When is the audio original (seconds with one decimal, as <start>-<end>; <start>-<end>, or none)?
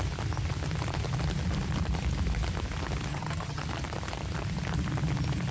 0.0-3.1; 3.6-5.5